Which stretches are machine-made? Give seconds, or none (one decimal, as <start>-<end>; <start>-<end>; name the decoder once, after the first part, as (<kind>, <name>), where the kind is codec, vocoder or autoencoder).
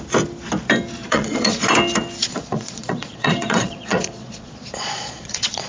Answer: 1.0-1.7 (vocoder, Vocos); 2.2-5.7